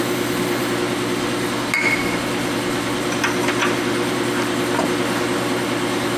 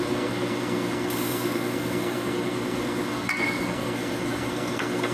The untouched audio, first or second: first